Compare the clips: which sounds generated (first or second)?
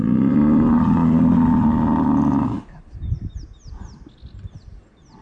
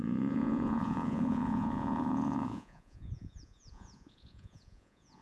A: second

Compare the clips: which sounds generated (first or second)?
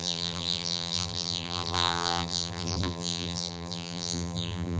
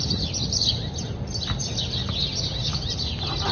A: first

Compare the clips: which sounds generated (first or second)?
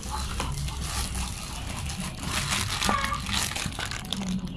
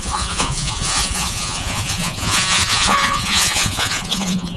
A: second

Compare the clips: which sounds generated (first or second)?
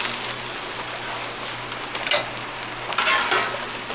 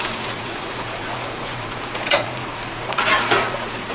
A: second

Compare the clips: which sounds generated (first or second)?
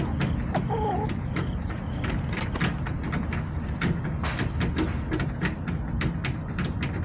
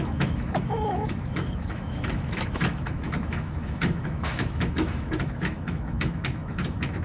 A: second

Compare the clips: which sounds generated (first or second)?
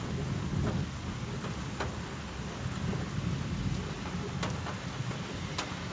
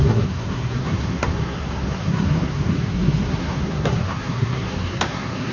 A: second